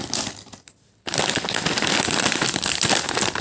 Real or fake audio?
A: real